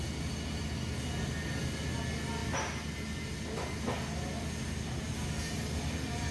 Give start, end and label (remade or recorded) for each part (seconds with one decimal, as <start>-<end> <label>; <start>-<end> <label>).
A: 0.0-6.3 recorded